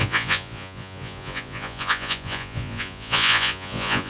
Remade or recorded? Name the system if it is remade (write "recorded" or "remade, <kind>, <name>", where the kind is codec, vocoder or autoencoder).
remade, vocoder, Vocos